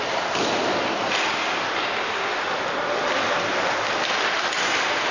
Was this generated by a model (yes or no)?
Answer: no